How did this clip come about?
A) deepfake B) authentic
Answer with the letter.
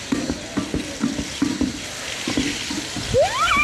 B